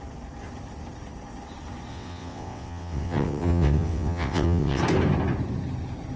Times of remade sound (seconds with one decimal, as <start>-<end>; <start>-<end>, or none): 1.9-4.8